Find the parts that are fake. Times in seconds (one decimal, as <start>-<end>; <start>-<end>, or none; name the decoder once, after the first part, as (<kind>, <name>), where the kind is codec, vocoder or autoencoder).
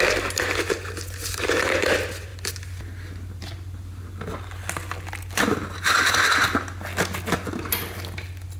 none